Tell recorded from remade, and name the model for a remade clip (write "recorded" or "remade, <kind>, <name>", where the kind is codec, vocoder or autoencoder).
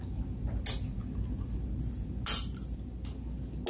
recorded